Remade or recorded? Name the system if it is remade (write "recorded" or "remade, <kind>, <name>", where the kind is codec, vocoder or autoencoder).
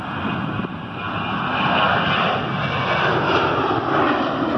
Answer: recorded